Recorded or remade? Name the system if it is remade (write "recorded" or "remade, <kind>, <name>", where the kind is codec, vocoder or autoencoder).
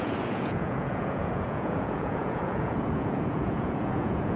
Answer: remade, vocoder, Vocos